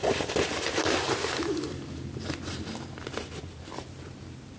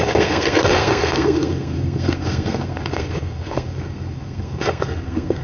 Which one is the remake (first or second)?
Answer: second